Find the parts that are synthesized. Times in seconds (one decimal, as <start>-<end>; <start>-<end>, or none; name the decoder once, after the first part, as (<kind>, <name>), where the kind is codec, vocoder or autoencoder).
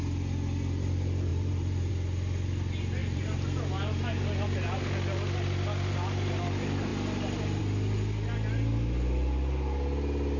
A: 1.3-1.9 (vocoder, BigVGAN v2); 3.0-4.9